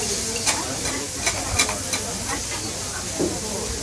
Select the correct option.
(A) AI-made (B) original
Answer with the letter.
B